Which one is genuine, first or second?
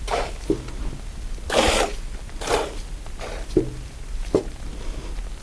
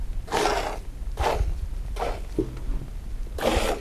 second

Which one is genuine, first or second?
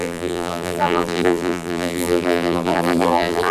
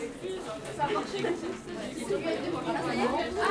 second